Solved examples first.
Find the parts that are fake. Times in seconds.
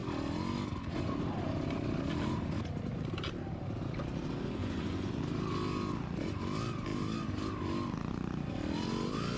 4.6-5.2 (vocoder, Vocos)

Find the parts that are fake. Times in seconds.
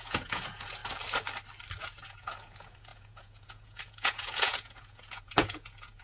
0.0-0.8 (vocoder, Vocos); 1.8-6.0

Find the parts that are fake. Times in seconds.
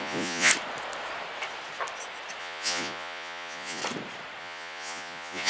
0.0-0.5 (vocoder, Vocos); 2.4-3.8; 4.4-5.5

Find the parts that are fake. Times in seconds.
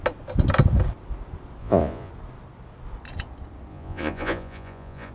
1.6-2.1 (vocoder, Vocos); 3.7-5.1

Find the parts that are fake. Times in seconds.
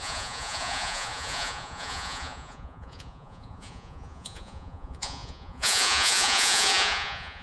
0.0-7.4 (vocoder, Vocos)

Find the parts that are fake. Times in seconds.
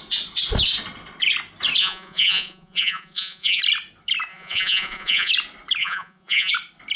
1.8-3.6 (vocoder, Vocos); 4.3-5.3; 5.8-6.5